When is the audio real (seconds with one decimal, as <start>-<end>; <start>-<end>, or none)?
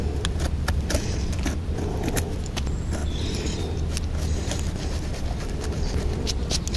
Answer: 0.0-6.8